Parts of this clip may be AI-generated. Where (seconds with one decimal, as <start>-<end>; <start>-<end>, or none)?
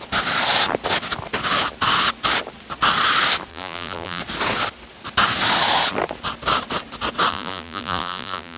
3.5-4.2; 7.3-8.6